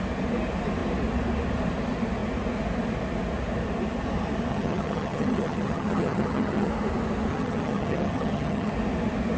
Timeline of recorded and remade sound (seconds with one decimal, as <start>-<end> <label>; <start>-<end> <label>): 0.0-4.5 recorded; 4.5-6.7 remade; 6.7-7.3 recorded; 7.3-8.7 remade; 8.7-9.4 recorded

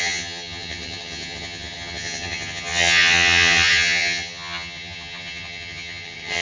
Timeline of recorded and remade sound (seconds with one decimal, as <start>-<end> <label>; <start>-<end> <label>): 0.0-6.4 remade